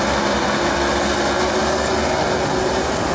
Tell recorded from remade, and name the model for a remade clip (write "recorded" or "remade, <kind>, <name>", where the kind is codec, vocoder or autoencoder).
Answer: recorded